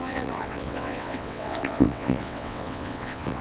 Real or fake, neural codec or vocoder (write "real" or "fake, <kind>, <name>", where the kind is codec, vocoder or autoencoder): fake, vocoder, WaveNeXt